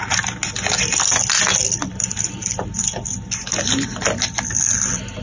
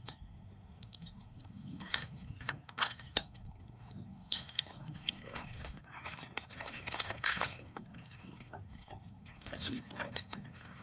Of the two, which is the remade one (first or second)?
second